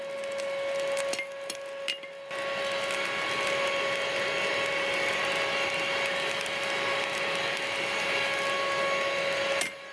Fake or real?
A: real